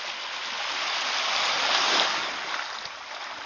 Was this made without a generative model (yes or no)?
yes